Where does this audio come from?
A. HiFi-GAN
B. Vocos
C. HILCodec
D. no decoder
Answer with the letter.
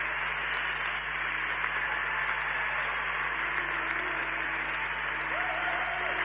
D